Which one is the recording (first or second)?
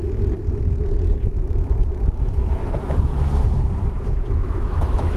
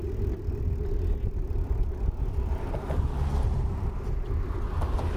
second